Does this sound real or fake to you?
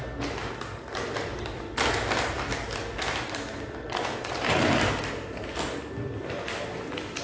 real